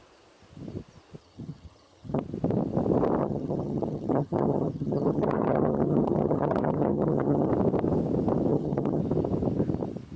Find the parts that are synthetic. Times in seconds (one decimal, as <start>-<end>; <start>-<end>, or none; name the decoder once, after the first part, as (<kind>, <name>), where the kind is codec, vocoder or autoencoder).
1.2-2.2 (vocoder, HiFi-GAN); 3.2-7.5; 8.5-9.0